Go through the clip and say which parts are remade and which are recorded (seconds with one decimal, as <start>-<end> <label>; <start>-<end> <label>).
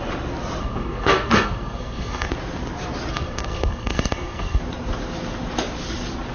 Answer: 0.0-0.6 recorded; 0.6-2.3 remade; 2.3-3.1 recorded; 3.1-4.6 remade; 4.6-6.3 recorded